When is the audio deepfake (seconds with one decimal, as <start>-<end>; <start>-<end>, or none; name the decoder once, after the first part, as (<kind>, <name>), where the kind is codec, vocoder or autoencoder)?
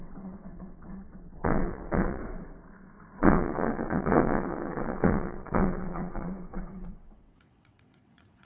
0.0-2.2 (vocoder, WaveNeXt); 3.2-8.5